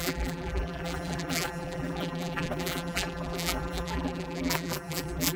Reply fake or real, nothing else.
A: fake